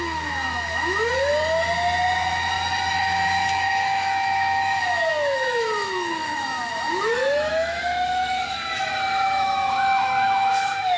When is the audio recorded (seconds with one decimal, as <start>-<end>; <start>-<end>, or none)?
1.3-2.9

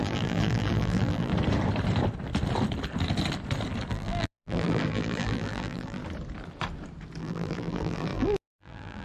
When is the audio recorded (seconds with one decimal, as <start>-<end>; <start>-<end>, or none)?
1.3-3.9; 6.0-7.2

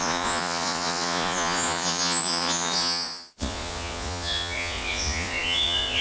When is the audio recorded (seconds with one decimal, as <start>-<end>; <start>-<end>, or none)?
none

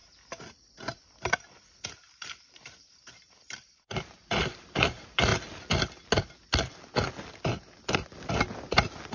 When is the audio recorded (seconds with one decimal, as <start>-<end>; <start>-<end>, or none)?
0.0-1.9; 5.3-9.1

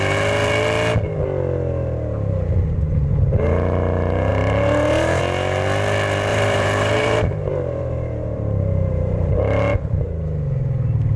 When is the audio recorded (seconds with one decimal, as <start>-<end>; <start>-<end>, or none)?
0.0-4.3; 5.2-6.3; 9.6-11.2

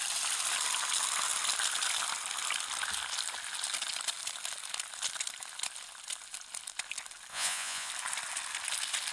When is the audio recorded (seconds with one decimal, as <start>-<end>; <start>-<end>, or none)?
0.0-7.3; 7.9-9.1